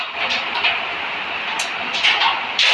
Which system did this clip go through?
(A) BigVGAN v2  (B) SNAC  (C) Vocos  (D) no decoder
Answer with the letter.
D